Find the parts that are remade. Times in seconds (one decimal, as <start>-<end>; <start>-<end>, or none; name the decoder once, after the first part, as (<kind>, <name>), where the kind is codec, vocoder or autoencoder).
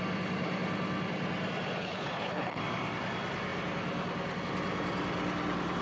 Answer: 1.8-2.6 (codec, HILCodec)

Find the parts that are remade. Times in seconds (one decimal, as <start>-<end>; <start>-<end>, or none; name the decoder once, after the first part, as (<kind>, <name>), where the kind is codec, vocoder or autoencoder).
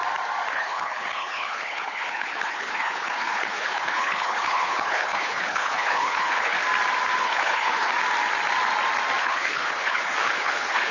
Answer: 0.5-6.6 (codec, HILCodec); 7.2-7.9; 9.2-10.9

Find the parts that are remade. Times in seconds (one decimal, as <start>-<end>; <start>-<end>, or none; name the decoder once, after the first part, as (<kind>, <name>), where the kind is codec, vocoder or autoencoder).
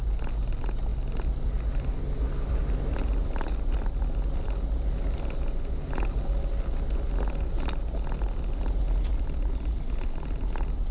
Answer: none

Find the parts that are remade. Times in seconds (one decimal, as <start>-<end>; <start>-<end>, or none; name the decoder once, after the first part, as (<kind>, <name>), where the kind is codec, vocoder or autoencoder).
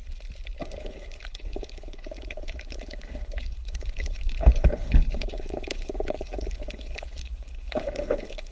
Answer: 0.8-8.5 (codec, HILCodec)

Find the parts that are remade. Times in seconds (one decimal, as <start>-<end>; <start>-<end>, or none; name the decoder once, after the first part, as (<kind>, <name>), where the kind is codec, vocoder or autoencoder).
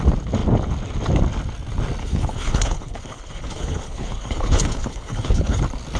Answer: 2.0-5.6 (codec, HILCodec)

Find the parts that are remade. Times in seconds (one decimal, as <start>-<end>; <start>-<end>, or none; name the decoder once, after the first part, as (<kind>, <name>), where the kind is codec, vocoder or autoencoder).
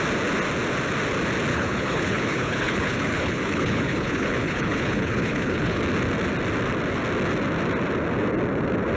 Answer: 1.5-5.8 (codec, HILCodec)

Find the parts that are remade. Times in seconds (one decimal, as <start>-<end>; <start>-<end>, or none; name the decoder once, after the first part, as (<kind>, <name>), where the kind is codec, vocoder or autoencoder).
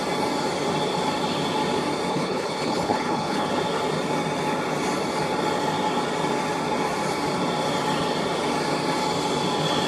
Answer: 2.1-3.5 (codec, HILCodec)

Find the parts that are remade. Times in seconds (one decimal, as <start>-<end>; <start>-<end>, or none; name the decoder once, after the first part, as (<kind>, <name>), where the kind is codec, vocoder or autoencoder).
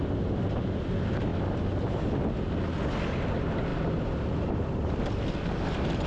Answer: none